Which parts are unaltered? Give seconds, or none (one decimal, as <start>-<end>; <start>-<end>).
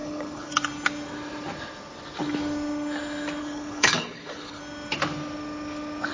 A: 0.5-3.4; 4.6-6.1